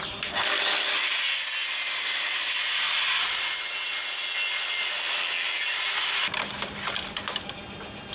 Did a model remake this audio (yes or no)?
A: no